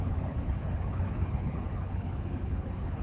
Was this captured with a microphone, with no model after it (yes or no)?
no